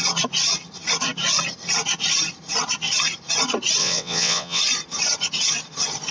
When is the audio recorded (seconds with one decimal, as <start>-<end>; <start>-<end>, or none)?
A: 0.0-3.8; 4.6-6.1